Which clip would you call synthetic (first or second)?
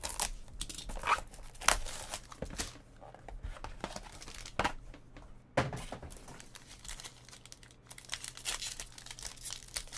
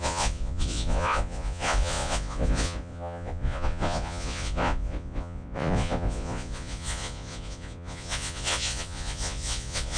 second